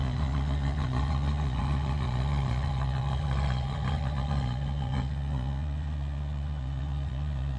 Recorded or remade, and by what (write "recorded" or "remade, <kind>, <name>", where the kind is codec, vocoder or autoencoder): remade, vocoder, Vocos